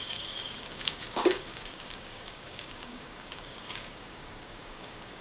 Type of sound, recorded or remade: remade